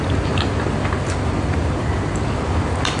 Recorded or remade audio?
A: recorded